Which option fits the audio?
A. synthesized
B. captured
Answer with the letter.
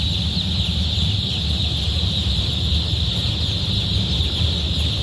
B